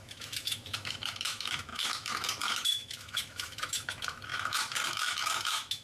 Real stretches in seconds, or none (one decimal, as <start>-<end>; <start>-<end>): none